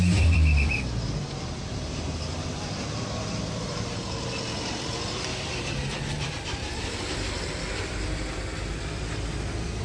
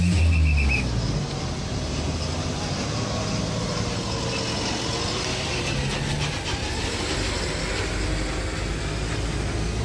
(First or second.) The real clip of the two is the second